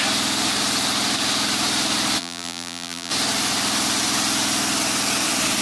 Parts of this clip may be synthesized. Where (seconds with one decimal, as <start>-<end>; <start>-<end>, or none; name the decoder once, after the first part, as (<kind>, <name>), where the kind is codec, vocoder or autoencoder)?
2.2-3.1 (vocoder, BigVGAN v2)